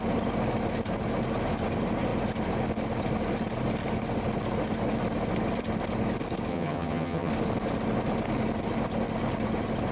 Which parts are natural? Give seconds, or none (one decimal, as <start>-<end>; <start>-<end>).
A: 0.0-6.5; 7.3-9.9